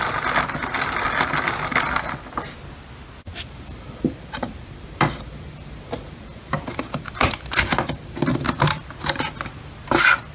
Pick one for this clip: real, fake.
real